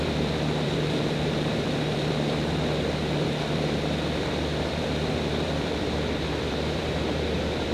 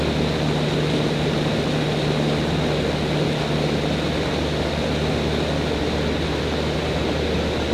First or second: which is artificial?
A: first